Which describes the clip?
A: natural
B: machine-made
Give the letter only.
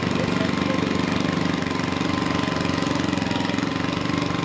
A